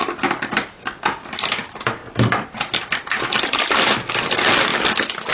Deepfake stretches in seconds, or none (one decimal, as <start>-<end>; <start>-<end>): 0.0-1.3; 2.0-3.5